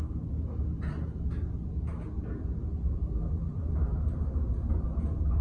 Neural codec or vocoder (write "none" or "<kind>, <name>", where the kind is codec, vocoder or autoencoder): none